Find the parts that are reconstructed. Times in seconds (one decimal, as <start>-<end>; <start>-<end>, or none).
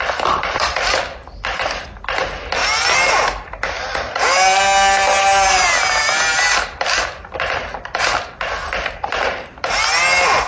none